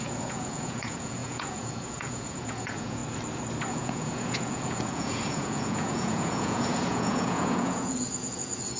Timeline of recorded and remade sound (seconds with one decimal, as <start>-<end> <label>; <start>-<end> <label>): 0.0-3.0 remade; 3.0-3.7 recorded; 3.7-8.8 remade